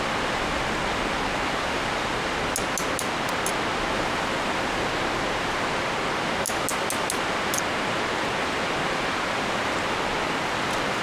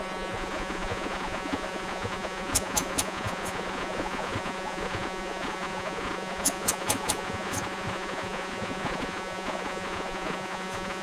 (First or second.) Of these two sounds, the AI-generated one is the second